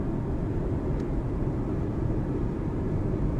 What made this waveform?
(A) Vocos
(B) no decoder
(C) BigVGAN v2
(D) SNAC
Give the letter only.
B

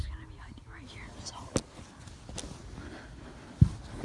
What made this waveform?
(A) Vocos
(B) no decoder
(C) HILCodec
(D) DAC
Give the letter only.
B